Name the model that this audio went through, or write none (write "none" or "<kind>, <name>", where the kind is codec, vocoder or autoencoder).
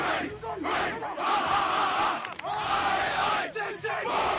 none